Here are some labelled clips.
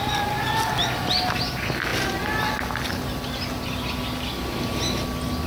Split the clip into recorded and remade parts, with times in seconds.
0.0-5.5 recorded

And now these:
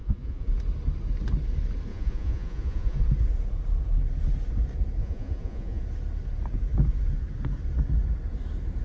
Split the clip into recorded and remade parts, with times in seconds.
0.0-0.5 remade; 0.5-1.9 recorded; 1.9-3.0 remade; 3.0-5.0 recorded; 5.0-5.8 remade; 5.8-8.8 recorded

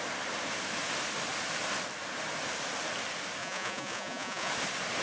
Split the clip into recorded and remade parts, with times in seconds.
0.0-3.4 recorded; 3.4-4.5 remade; 4.5-5.0 recorded

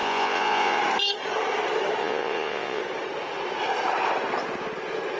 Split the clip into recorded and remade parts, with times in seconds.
0.0-0.8 remade; 0.8-2.0 recorded; 2.0-2.8 remade; 2.8-5.2 recorded